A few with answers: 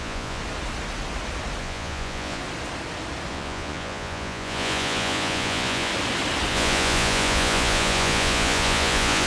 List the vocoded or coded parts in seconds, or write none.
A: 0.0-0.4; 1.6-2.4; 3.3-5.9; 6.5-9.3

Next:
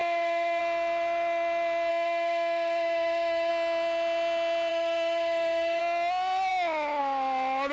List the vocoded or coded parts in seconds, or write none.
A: 0.0-0.6; 1.9-3.5; 4.7-5.8

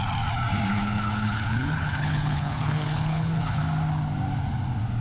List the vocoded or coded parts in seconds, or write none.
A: 0.7-3.6

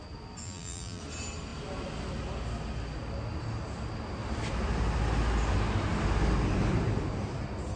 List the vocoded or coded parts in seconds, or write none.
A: 0.4-1.0

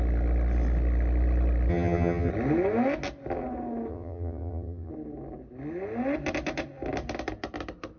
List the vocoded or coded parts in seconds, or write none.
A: 1.7-2.3; 3.9-4.9